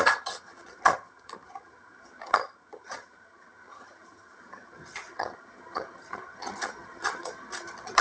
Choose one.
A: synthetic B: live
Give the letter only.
A